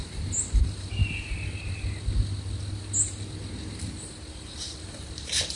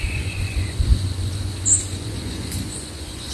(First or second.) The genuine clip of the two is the first